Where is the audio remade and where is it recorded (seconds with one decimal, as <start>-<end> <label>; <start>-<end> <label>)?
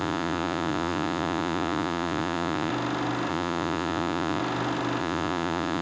0.0-2.7 remade; 2.7-3.3 recorded; 3.3-4.4 remade; 4.4-5.0 recorded; 5.0-5.8 remade